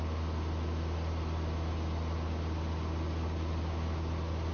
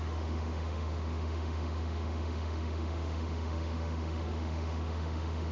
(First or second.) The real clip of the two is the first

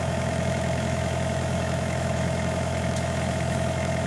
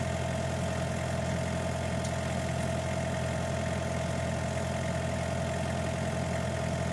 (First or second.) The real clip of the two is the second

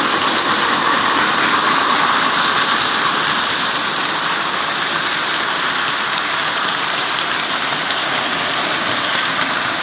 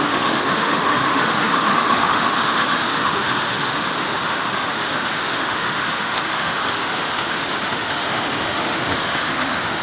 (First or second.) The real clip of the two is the first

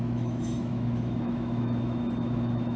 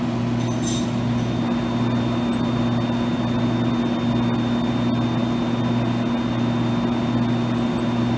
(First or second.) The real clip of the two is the second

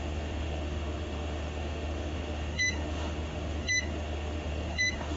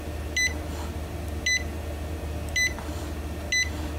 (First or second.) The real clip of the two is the second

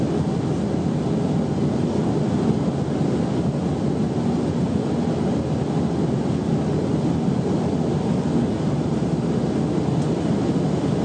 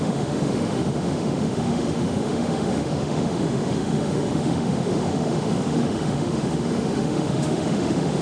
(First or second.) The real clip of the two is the first